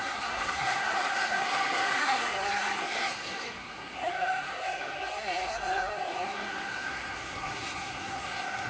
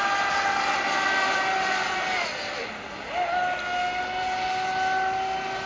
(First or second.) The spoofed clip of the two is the first